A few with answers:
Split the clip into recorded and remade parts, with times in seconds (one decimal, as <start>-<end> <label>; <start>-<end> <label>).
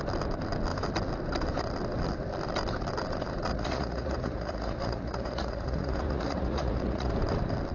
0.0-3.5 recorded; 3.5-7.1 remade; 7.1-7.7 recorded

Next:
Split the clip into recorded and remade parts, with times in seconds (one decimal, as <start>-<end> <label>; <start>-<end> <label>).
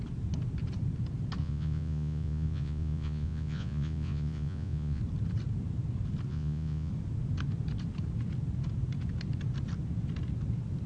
0.0-1.4 recorded; 1.4-5.0 remade; 5.0-6.3 recorded; 6.3-6.9 remade; 6.9-10.9 recorded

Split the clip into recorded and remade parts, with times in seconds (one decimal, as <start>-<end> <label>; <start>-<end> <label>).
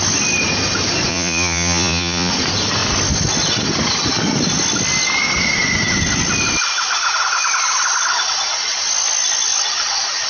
0.0-1.1 recorded; 1.1-2.3 remade; 2.3-10.3 recorded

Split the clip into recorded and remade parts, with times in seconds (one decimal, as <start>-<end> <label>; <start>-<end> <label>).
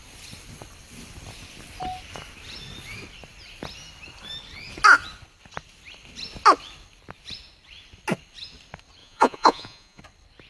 0.0-9.0 recorded; 9.0-10.0 remade; 10.0-10.5 recorded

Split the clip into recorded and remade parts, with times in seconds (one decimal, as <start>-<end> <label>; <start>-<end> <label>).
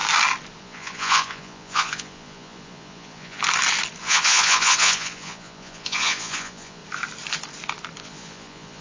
0.0-0.6 recorded; 0.6-3.4 remade; 3.4-4.0 recorded; 4.0-6.8 remade; 6.8-8.0 recorded; 8.0-8.8 remade